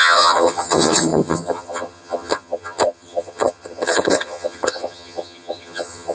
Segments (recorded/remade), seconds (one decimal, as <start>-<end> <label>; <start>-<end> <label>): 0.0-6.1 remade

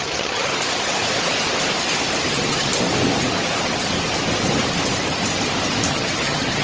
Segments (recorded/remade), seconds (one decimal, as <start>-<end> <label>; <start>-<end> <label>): 0.0-0.5 remade; 0.5-2.3 recorded; 2.3-2.7 remade; 2.7-5.9 recorded; 5.9-6.6 remade

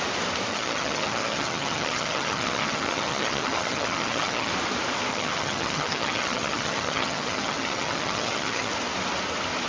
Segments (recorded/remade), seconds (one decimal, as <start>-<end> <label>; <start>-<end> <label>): 0.0-0.5 recorded; 0.5-4.5 remade; 4.5-5.1 recorded; 5.1-8.7 remade; 8.7-9.7 recorded